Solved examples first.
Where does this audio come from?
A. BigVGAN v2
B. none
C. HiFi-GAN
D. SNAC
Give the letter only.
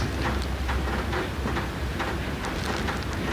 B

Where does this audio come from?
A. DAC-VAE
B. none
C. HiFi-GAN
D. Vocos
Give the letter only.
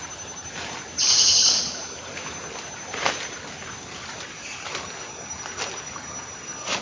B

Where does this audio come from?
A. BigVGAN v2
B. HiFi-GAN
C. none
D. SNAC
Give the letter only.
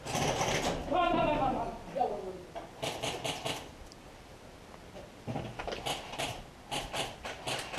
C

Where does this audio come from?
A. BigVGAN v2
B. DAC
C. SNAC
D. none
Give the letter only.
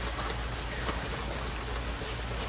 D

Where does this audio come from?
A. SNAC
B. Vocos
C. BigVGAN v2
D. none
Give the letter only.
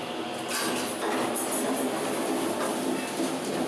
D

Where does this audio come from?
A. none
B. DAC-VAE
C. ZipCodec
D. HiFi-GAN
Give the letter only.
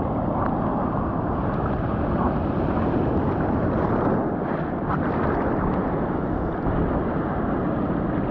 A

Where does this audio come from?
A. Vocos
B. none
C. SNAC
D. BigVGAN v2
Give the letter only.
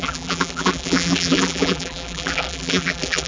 D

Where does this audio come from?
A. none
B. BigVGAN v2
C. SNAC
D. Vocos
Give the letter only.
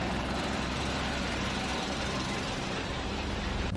B